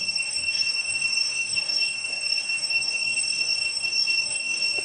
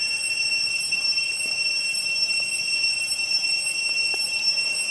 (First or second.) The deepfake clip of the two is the first